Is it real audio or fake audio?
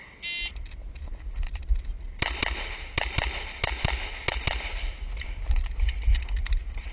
real